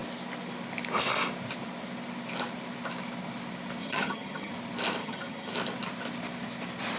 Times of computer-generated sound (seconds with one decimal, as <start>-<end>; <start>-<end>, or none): 3.8-4.5; 5.0-5.5